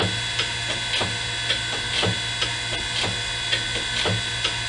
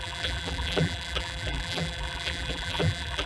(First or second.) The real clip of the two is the first